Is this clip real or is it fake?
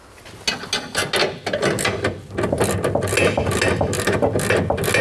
real